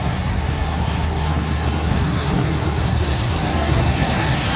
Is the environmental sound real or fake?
fake